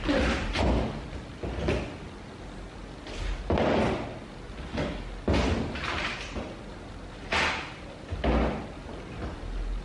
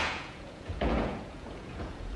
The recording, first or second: first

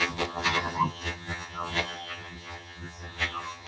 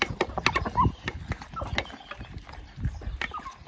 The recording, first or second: second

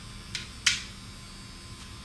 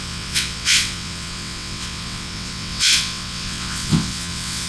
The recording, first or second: first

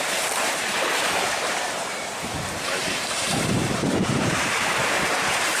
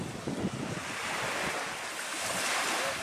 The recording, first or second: second